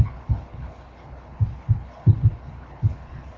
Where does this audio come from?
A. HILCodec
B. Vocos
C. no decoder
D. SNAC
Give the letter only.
A